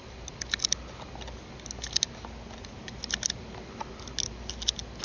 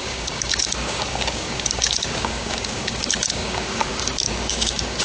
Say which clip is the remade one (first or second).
second